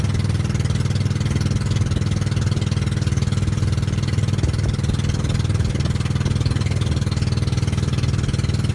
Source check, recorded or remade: recorded